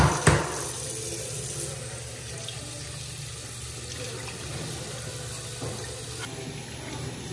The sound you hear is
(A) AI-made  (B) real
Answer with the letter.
B